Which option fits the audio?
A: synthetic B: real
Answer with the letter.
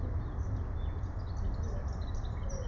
B